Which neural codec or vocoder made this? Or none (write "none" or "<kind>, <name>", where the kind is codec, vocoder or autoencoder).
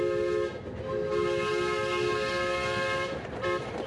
none